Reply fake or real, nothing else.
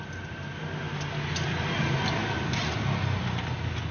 real